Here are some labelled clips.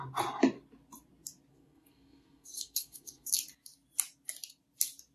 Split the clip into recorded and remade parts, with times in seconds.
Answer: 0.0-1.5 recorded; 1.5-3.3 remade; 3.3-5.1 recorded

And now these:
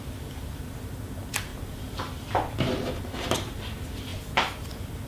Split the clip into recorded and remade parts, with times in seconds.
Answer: 0.0-5.1 recorded